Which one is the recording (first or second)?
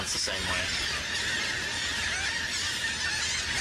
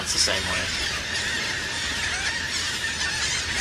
first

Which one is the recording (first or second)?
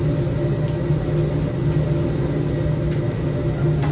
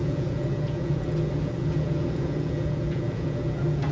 first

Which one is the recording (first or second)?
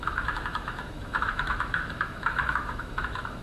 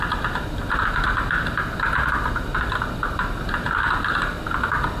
second